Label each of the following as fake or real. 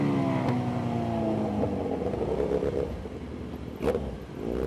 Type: real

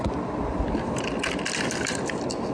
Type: real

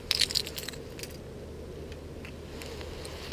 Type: real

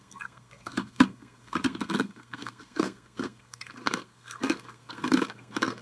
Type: fake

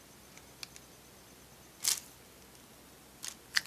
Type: real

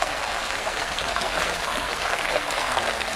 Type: fake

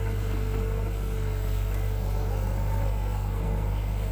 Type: fake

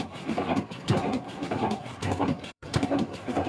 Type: fake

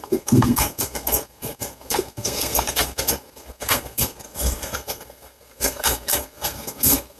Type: fake